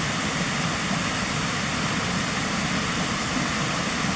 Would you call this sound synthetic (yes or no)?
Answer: no